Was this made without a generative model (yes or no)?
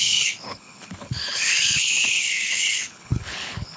no